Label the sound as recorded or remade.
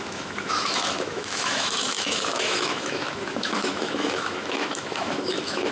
remade